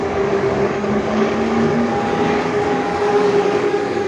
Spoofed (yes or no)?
yes